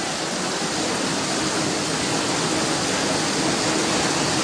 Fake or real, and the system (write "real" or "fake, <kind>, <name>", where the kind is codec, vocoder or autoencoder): real